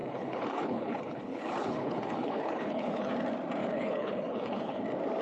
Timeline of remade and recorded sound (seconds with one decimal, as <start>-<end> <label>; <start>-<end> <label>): 0.0-3.1 remade; 3.1-3.6 recorded; 3.6-4.8 remade; 4.8-5.2 recorded